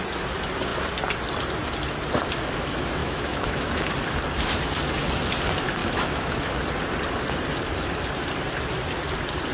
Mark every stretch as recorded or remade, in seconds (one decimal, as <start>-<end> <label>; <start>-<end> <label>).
0.0-3.0 recorded; 3.0-3.9 remade; 3.9-5.8 recorded; 5.8-6.6 remade; 6.6-9.5 recorded